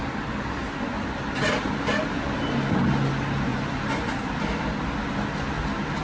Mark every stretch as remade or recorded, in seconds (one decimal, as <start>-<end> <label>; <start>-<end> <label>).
0.0-3.5 recorded; 3.5-4.3 remade; 4.3-6.0 recorded